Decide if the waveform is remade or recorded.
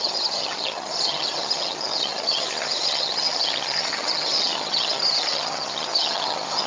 remade